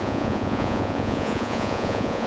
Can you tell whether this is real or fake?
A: fake